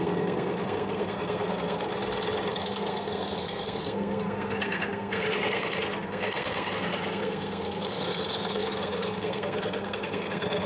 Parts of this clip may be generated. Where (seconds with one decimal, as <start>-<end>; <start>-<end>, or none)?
0.0-1.9; 2.5-10.7